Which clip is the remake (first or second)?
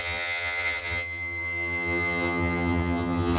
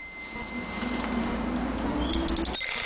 first